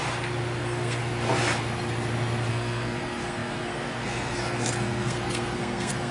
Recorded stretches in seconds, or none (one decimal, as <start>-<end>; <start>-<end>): 0.0-0.6; 1.0-2.5